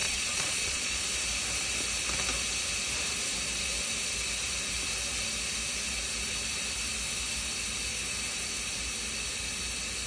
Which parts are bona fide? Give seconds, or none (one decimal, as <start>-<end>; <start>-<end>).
1.0-10.1